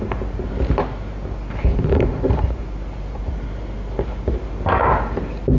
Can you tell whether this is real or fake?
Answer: real